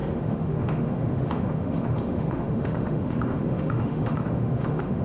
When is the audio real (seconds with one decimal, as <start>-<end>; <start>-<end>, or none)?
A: none